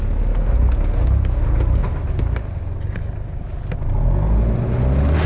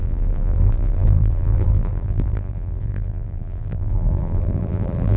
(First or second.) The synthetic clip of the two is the second